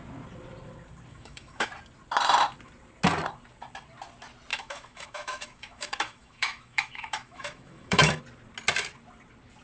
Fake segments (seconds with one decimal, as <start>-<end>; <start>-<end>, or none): 1.1-1.7; 4.5-8.2